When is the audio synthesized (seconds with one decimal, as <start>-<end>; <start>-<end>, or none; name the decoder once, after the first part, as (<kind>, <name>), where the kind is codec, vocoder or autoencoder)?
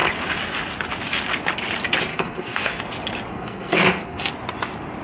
2.1-2.8 (codec, SNAC); 3.3-4.3